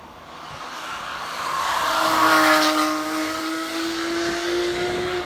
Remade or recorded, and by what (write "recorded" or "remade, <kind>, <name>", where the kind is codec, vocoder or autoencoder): remade, codec, DAC